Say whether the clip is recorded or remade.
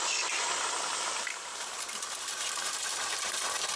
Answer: remade